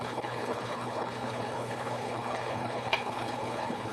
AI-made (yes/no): yes